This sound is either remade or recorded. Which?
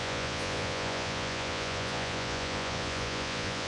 remade